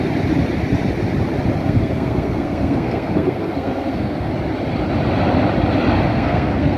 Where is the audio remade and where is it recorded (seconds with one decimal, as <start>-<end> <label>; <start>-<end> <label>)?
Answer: 0.0-1.6 recorded; 1.6-4.3 remade; 4.3-6.1 recorded; 6.1-6.8 remade